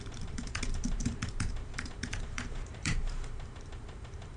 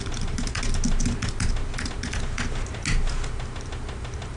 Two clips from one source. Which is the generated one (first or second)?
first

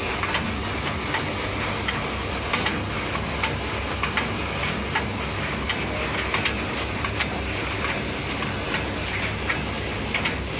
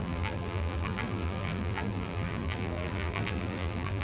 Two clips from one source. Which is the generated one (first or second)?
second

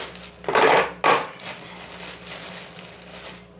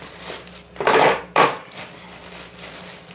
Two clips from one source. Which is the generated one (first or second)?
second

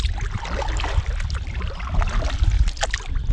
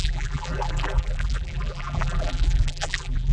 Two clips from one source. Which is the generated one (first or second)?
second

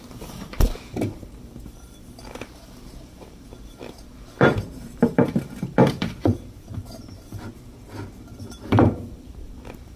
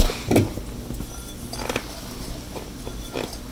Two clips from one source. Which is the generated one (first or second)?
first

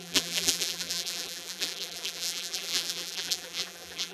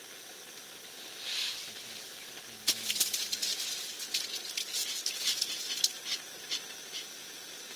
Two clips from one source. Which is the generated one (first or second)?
first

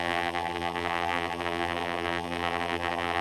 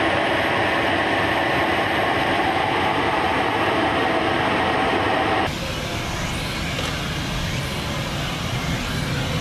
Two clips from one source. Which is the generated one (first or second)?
first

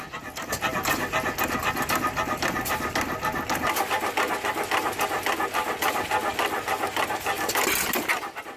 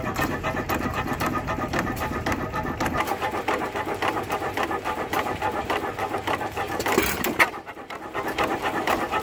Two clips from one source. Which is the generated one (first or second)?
second